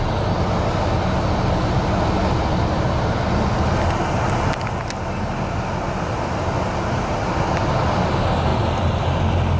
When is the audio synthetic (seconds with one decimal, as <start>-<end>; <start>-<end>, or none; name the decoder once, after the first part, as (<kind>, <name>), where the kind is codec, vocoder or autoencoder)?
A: none